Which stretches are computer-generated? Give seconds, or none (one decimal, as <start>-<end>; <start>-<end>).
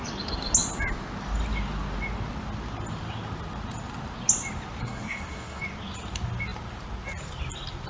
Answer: 4.8-5.6